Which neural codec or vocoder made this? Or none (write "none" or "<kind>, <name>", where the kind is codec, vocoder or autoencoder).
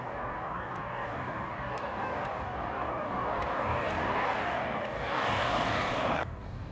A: codec, DAC